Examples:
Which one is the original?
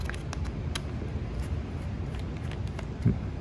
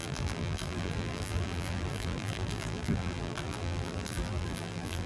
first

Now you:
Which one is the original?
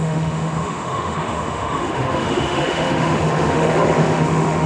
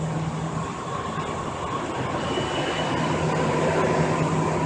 second